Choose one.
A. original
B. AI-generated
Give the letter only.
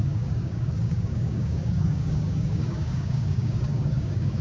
B